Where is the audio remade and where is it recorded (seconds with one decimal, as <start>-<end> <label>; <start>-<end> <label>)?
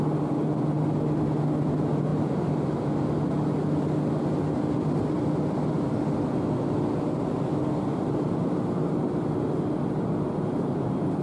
0.0-11.2 recorded